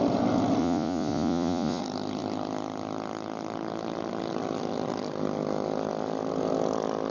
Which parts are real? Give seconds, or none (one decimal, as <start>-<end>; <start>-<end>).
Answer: 0.0-0.6; 1.8-7.1